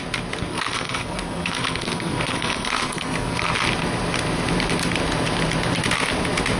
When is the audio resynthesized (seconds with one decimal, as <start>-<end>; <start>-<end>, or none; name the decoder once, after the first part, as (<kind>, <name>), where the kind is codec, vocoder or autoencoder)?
0.5-3.5 (codec, SNAC)